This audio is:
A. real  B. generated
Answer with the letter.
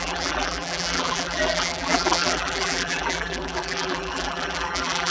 B